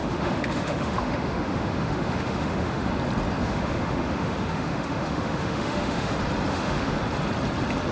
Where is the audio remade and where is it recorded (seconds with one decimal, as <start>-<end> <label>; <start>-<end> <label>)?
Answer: 0.0-2.9 remade; 2.9-3.4 recorded; 3.4-6.1 remade; 6.1-6.5 recorded; 6.5-7.0 remade; 7.0-7.9 recorded

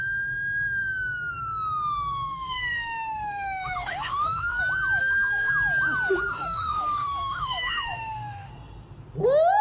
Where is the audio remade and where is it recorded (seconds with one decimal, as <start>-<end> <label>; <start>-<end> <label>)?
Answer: 0.0-2.3 recorded; 2.3-4.6 remade; 4.6-5.0 recorded; 5.0-5.5 remade; 5.5-6.3 recorded; 6.3-8.5 remade; 8.5-9.6 recorded

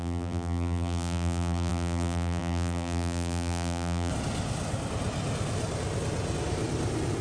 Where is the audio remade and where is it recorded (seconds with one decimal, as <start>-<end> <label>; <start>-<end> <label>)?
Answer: 0.0-4.1 remade; 4.1-7.2 recorded

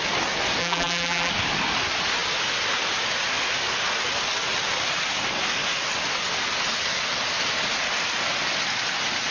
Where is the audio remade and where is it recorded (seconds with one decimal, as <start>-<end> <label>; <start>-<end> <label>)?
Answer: 0.0-0.6 recorded; 0.6-1.3 remade; 1.3-9.3 recorded

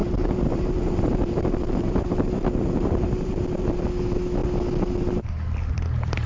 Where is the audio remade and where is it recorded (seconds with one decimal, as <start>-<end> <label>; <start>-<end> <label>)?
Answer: 0.0-3.8 remade; 3.8-6.3 recorded